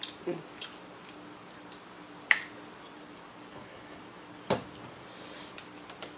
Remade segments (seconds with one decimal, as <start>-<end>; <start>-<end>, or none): 3.5-4.0

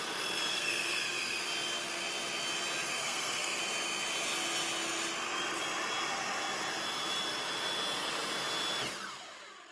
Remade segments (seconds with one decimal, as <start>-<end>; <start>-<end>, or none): 0.5-1.4; 3.0-3.6

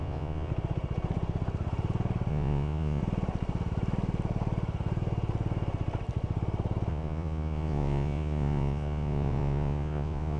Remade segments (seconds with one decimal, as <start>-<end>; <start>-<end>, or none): 0.0-0.5; 2.3-3.0; 6.9-10.4

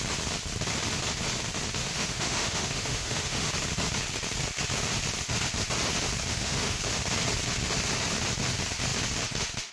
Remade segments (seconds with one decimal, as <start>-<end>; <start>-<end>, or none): 1.8-3.5; 6.3-6.8

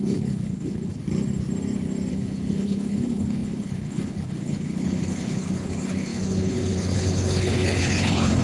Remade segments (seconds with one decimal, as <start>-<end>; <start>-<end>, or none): 0.0-1.0; 2.1-8.4

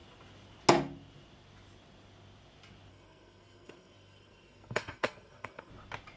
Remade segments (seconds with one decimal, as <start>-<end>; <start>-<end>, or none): 2.9-5.7

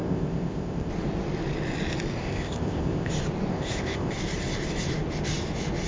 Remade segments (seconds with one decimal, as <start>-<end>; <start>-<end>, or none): 0.0-0.9; 2.2-3.1; 3.5-4.1